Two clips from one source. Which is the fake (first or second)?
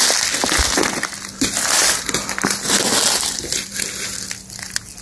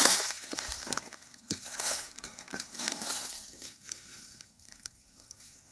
second